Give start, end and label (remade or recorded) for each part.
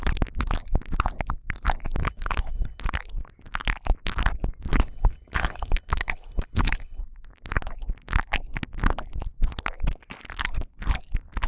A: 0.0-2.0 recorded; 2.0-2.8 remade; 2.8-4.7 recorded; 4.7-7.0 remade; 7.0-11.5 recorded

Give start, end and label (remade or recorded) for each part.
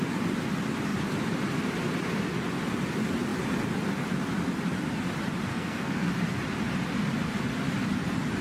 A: 0.0-5.5 recorded; 5.5-6.1 remade; 6.1-8.4 recorded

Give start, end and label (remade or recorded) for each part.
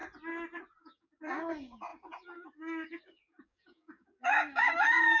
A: 0.0-0.8 recorded; 0.8-5.2 remade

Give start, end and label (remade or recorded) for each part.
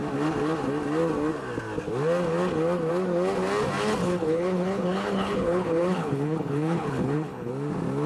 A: 0.0-4.0 recorded; 4.0-7.5 remade; 7.5-8.1 recorded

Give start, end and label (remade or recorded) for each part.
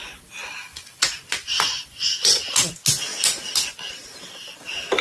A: 0.0-0.7 recorded; 0.7-2.7 remade; 2.7-5.0 recorded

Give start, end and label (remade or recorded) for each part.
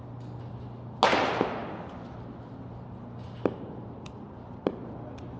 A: 0.0-5.4 recorded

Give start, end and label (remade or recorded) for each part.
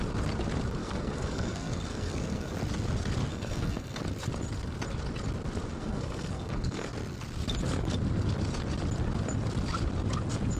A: 0.0-0.8 recorded; 0.8-2.5 remade; 2.5-3.3 recorded; 3.3-4.0 remade; 4.0-5.7 recorded; 5.7-6.9 remade; 6.9-10.6 recorded